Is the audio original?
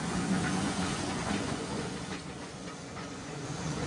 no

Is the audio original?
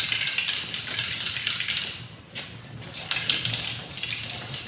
yes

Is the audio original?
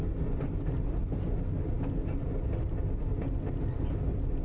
yes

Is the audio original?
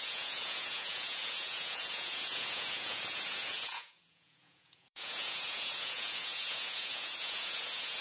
no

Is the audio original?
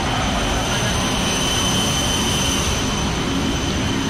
yes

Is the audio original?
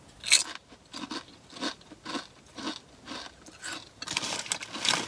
yes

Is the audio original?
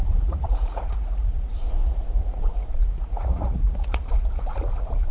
no